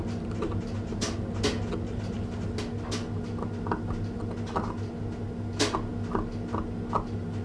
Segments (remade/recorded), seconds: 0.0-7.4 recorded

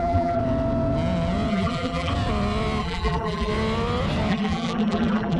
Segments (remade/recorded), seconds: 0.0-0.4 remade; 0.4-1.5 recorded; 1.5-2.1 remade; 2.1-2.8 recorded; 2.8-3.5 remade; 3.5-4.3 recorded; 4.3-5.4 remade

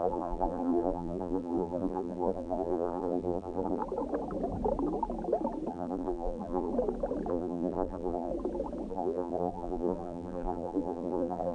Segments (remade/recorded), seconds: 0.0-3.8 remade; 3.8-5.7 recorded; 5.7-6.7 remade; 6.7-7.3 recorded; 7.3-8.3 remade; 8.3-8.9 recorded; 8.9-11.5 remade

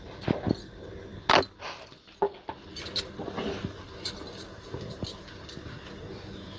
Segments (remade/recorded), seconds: 0.0-6.6 recorded

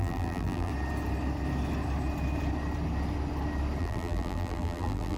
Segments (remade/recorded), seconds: 0.0-0.7 remade; 0.7-3.8 recorded; 3.8-5.2 remade